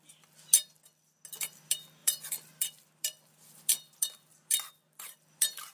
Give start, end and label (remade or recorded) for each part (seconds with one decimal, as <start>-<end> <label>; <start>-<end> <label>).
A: 0.0-2.0 recorded; 2.0-5.7 remade